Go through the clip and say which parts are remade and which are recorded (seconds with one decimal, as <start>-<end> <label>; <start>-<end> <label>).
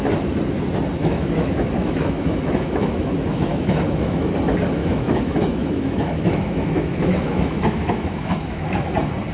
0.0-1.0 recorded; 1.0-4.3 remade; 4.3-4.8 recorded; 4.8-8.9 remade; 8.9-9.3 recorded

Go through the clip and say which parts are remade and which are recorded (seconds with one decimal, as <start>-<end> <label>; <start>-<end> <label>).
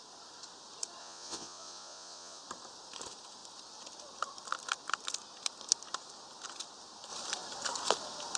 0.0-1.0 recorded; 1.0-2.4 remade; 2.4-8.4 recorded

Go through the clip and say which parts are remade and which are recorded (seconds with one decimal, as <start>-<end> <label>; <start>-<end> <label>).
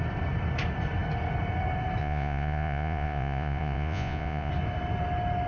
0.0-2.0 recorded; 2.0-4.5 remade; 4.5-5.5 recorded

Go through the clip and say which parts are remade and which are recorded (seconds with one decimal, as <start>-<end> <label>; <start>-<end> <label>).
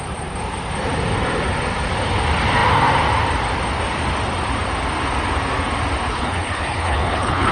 0.0-6.1 recorded; 6.1-7.5 remade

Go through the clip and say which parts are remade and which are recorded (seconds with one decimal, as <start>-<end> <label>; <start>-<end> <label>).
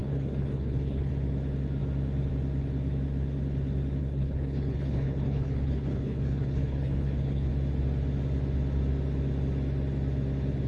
0.0-1.1 remade; 1.1-4.0 recorded; 4.0-7.5 remade; 7.5-10.7 recorded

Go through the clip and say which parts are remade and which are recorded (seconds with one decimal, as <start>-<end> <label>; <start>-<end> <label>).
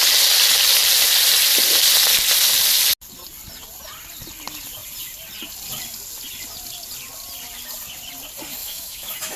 0.0-8.6 recorded; 8.6-9.4 remade